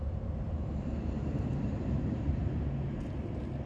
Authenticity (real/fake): fake